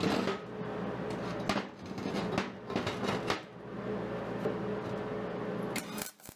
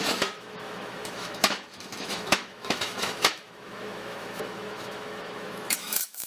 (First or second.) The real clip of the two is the first